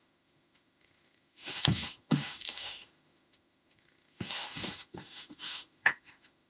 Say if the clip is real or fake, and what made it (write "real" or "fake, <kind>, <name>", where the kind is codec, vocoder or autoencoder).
fake, autoencoder, DAC-VAE